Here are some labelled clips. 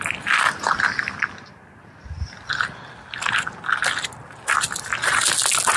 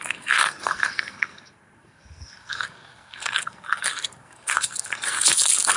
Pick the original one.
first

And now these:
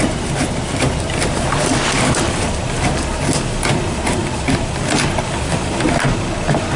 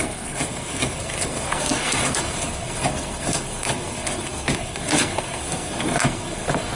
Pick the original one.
first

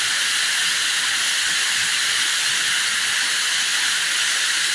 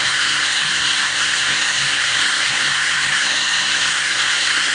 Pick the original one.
first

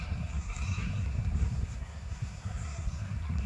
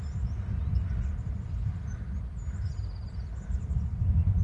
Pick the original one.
second